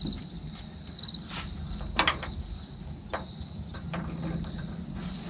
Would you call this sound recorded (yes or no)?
yes